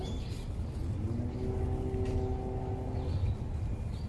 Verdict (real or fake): real